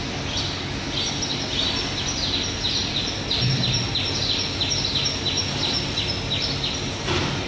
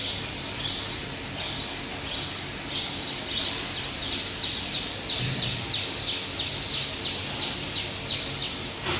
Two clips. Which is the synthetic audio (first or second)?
second